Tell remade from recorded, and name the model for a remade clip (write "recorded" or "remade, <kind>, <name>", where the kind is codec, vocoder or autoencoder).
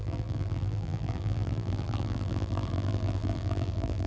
remade, vocoder, BigVGAN v2